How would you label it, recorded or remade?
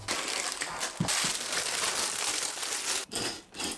recorded